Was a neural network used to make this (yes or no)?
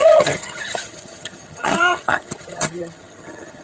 yes